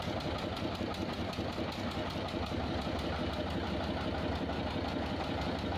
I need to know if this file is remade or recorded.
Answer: recorded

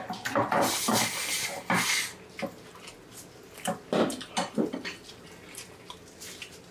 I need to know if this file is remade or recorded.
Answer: recorded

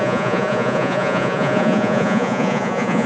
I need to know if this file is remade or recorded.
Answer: remade